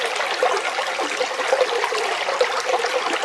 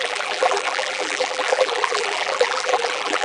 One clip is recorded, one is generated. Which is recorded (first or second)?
first